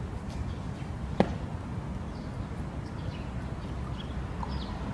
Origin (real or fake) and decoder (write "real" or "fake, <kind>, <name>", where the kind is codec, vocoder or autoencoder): real